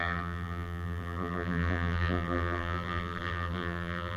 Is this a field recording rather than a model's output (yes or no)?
no